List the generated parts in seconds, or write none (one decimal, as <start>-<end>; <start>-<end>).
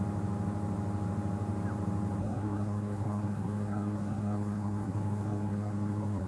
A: 2.2-6.3